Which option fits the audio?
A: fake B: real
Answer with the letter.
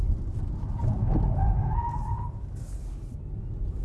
B